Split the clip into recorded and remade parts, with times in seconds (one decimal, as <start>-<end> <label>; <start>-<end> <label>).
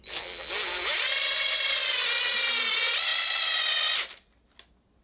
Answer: 0.0-5.0 recorded